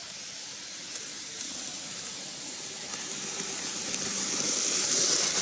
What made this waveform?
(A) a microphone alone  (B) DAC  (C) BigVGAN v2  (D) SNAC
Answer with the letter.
C